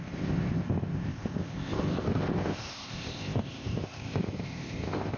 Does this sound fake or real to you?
fake